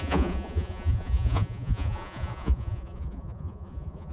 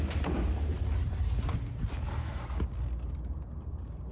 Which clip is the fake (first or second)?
first